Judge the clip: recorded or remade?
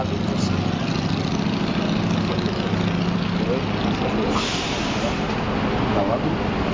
recorded